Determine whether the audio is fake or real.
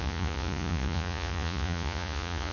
fake